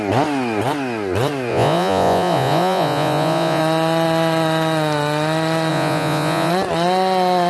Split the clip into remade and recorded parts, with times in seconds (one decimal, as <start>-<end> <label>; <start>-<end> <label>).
0.0-1.5 recorded; 1.5-3.6 remade; 3.6-5.7 recorded; 5.7-6.5 remade; 6.5-7.5 recorded